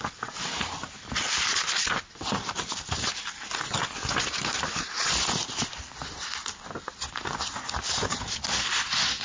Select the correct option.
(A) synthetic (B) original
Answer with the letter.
B